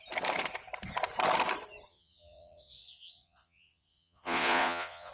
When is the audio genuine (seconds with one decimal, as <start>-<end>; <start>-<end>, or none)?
0.0-1.9